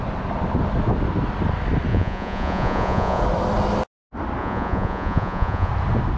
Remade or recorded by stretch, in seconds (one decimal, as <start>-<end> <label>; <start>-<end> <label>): 0.0-1.9 recorded; 1.9-3.2 remade; 3.2-4.4 recorded; 4.4-5.7 remade; 5.7-6.2 recorded